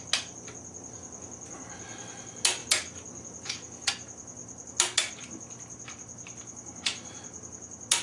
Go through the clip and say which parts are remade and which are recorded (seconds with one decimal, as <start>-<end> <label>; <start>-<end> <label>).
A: 0.0-8.0 recorded